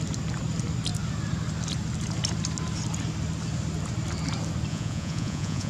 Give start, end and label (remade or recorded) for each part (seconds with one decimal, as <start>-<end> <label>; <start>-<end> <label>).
0.0-4.7 recorded; 4.7-5.7 remade